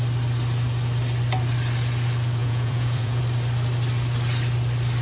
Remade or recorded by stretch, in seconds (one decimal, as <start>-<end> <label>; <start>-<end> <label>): 0.0-2.4 recorded; 2.4-3.2 remade; 3.2-5.0 recorded